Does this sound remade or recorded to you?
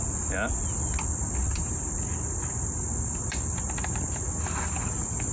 recorded